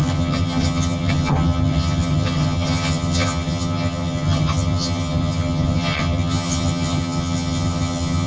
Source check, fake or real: fake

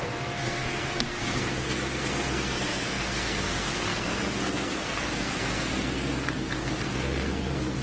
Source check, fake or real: fake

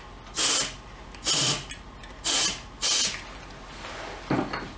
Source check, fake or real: real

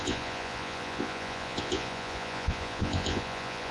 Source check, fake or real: fake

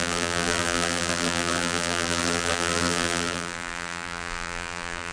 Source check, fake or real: fake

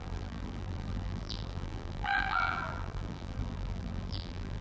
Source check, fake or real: fake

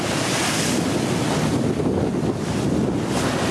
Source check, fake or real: real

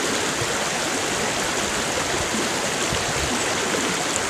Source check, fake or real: real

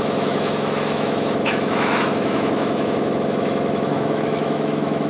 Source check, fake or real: fake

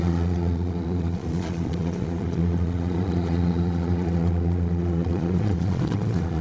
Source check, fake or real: fake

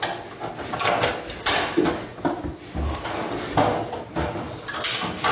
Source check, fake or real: real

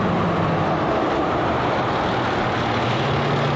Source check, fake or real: real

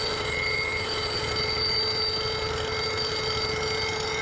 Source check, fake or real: real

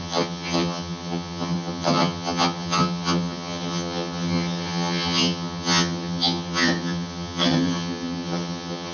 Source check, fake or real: fake